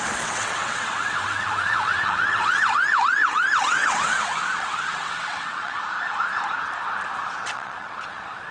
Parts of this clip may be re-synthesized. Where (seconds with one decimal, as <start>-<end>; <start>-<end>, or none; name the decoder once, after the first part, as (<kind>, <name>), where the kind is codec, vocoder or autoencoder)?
0.0-5.8 (vocoder, WaveNeXt); 7.4-8.5